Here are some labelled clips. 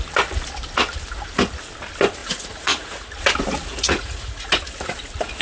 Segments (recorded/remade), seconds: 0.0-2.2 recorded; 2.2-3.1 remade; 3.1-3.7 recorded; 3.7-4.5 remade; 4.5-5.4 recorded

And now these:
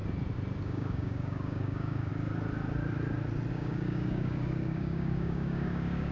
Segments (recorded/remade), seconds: 0.0-0.6 recorded; 0.6-2.1 remade; 2.1-3.5 recorded; 3.5-6.1 remade

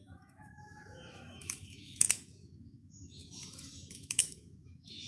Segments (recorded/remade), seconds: 0.0-5.1 remade

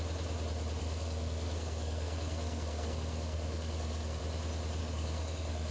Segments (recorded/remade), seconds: 0.0-0.8 recorded; 0.8-4.2 remade; 4.2-4.8 recorded; 4.8-5.7 remade

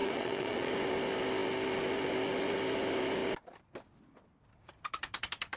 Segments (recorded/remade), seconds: 0.0-0.7 remade; 0.7-5.6 recorded

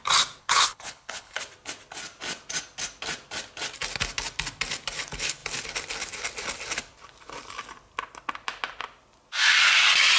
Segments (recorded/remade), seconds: 0.0-0.4 recorded; 0.4-1.4 remade; 1.4-10.2 recorded